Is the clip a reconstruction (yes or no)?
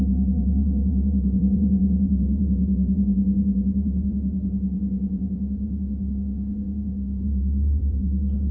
yes